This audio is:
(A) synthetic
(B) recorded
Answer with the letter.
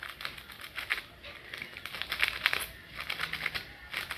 B